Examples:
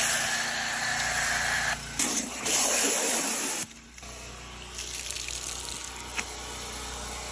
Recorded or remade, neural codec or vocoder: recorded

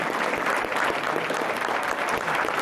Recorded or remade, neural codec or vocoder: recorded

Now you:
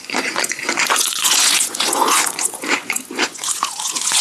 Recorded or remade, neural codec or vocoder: remade, vocoder, Vocos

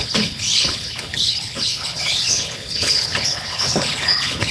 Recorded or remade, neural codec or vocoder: remade, codec, HILCodec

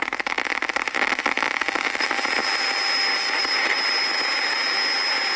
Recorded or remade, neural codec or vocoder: recorded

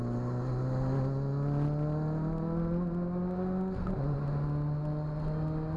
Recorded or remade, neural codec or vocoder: recorded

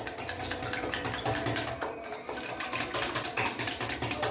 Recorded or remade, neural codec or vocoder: recorded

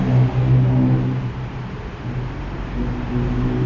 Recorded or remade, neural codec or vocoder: recorded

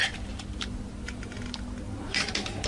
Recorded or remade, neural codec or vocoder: recorded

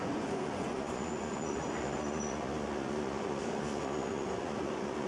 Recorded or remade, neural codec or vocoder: remade, vocoder, Vocos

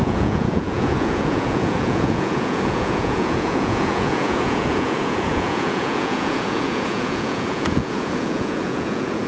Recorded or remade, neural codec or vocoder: remade, vocoder, Vocos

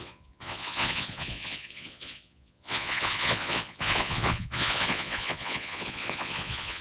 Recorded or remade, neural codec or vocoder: remade, vocoder, Vocos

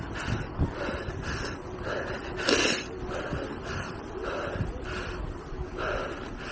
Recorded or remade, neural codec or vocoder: recorded